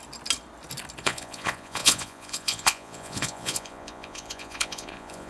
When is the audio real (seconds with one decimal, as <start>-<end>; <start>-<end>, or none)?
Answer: 0.0-1.0